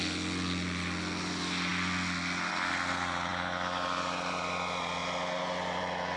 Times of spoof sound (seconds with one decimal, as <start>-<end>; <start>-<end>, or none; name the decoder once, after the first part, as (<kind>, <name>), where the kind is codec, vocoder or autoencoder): none